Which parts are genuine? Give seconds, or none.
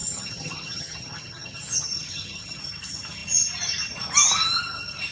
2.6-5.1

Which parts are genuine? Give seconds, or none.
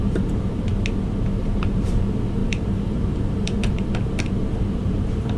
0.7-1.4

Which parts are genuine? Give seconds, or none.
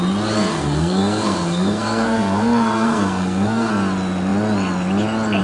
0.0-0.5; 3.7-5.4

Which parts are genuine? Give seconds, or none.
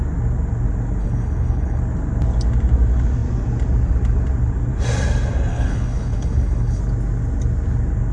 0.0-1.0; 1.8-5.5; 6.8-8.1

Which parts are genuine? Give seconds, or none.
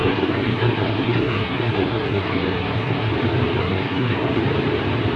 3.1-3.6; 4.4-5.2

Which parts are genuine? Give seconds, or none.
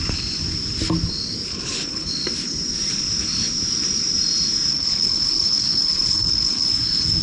0.0-1.5; 2.1-4.7; 6.7-7.2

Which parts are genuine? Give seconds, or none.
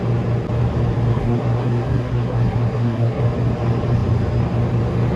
0.0-1.1; 3.2-5.2